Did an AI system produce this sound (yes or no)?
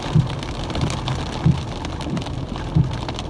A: yes